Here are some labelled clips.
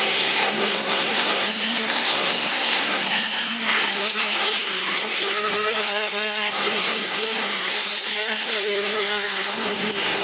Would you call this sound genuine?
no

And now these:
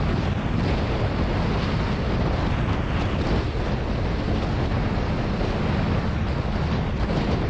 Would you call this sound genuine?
yes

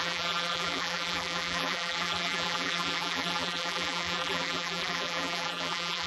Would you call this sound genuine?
no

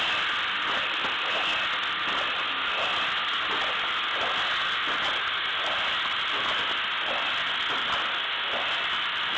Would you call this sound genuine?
yes